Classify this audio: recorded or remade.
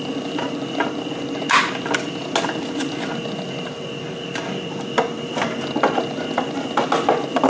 recorded